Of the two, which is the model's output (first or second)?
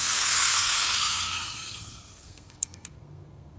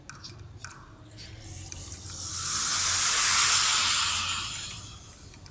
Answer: first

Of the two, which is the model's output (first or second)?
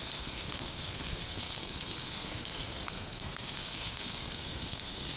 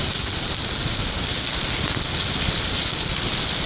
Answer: first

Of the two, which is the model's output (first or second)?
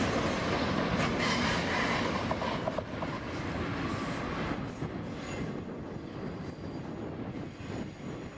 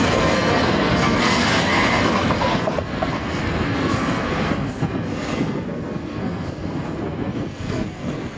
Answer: second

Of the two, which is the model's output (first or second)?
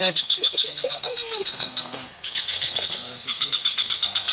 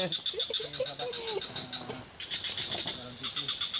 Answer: first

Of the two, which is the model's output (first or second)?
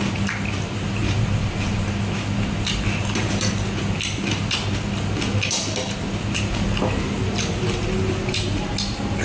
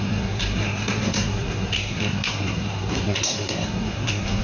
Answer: second